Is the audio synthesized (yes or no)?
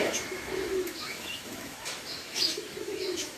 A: yes